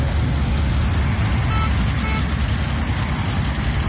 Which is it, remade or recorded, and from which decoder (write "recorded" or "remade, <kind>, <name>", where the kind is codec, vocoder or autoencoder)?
recorded